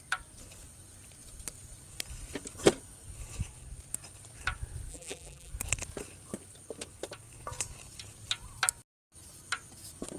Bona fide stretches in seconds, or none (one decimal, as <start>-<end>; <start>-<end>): 0.0-4.9; 5.5-10.2